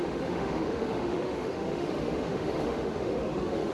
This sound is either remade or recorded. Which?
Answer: remade